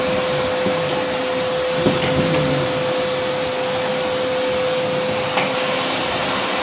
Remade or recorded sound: recorded